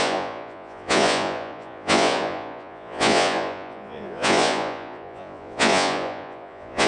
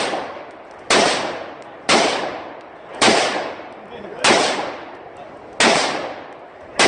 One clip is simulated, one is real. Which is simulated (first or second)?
first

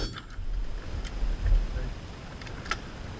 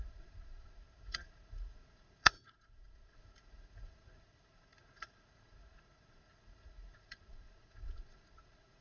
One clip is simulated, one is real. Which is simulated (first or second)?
second